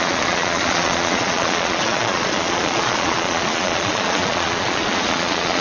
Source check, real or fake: fake